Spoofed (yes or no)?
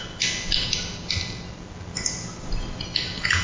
no